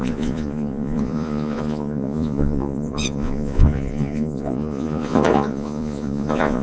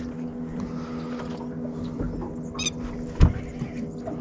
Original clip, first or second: second